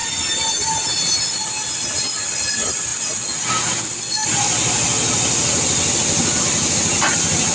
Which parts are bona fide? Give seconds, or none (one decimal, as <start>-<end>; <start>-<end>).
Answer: 0.0-7.5